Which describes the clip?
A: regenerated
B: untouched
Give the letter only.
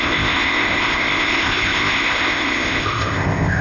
A